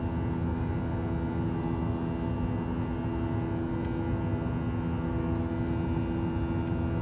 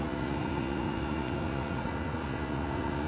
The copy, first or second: second